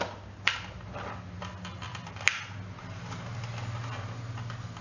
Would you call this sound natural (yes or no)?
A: yes